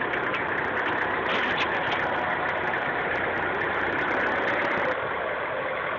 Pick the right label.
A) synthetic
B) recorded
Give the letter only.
B